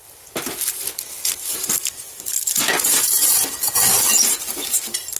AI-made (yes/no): no